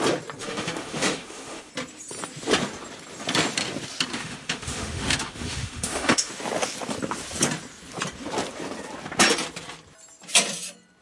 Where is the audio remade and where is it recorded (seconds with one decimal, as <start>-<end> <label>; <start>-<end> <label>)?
0.0-0.4 recorded; 0.4-1.7 remade; 1.7-4.1 recorded; 4.1-6.3 remade; 6.3-11.0 recorded